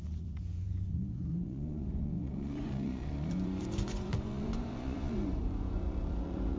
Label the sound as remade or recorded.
remade